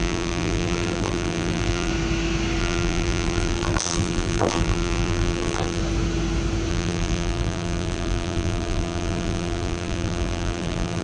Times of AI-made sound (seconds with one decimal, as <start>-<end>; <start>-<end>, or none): 0.0-1.9; 2.6-5.8; 6.7-11.0